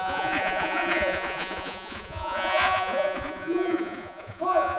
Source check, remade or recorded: remade